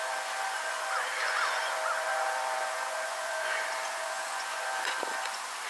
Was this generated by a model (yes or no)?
yes